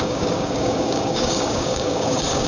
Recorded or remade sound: remade